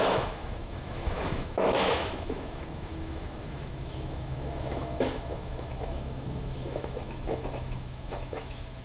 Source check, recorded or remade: remade